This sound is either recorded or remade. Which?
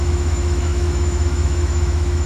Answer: remade